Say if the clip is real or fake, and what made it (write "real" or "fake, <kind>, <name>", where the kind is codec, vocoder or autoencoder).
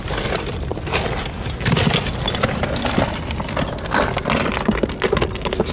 real